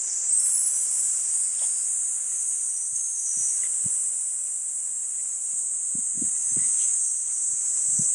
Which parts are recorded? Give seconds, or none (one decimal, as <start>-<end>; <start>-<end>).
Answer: 0.0-6.4; 7.0-8.1